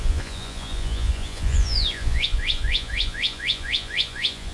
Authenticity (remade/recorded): remade